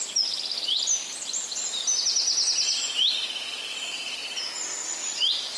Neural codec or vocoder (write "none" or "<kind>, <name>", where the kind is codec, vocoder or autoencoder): none